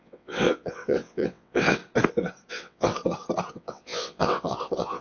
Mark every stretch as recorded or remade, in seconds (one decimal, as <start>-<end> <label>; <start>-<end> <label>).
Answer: 0.0-1.8 remade; 1.8-2.5 recorded; 2.5-2.9 remade; 2.9-3.5 recorded; 3.5-5.0 remade